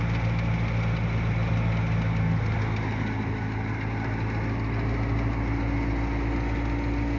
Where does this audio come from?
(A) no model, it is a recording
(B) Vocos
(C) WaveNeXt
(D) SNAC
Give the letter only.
A